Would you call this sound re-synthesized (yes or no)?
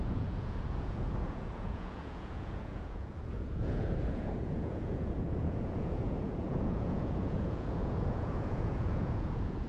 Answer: yes